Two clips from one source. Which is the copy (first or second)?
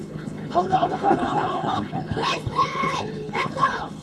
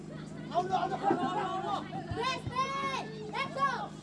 first